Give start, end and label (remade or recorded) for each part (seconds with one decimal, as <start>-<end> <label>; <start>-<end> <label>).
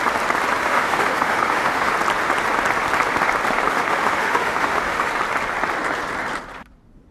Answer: 0.0-0.6 recorded; 0.6-1.9 remade; 1.9-3.7 recorded; 3.7-5.1 remade; 5.1-7.1 recorded